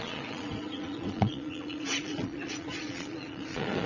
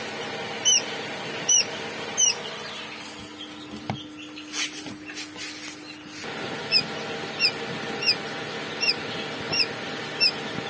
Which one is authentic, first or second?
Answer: second